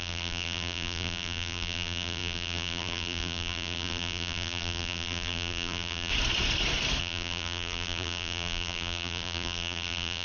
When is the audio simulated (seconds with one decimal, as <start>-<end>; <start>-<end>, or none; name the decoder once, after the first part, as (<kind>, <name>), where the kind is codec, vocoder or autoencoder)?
0.0-6.1 (vocoder, BigVGAN v2); 7.0-10.2